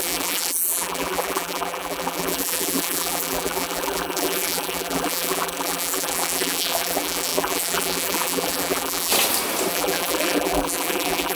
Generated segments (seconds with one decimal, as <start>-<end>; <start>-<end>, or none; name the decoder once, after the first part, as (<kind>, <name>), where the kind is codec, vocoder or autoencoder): 0.0-9.1 (vocoder, BigVGAN v2); 9.7-11.4